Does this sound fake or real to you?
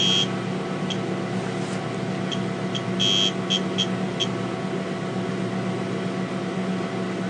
real